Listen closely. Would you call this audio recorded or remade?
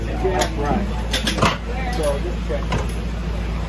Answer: recorded